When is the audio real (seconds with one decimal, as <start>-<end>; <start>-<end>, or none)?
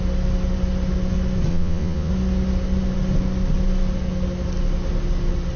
0.0-1.5; 2.1-5.6